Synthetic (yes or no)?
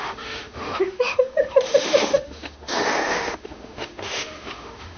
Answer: yes